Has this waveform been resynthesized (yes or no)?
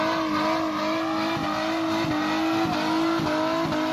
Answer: no